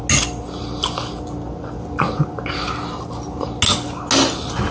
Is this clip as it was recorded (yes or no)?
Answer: yes